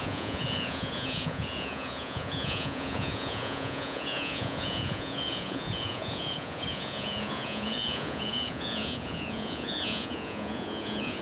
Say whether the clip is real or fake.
fake